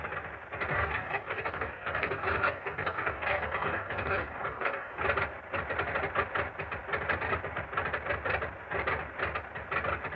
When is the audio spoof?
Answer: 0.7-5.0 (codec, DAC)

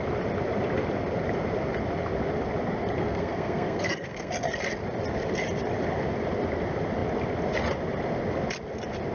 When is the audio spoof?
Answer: 3.0-4.3 (codec, SNAC)

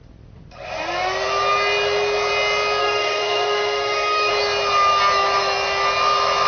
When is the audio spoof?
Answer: 2.8-4.3 (autoencoder, DAC-VAE)

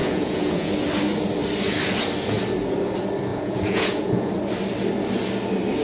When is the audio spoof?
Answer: 0.0-0.7 (vocoder, Vocos); 3.3-4.3

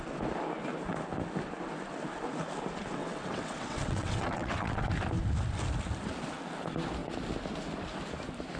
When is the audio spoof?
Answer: 3.0-4.9 (vocoder, WaveNeXt)

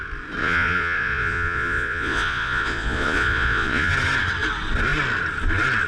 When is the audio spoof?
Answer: 0.4-3.9 (vocoder, Vocos)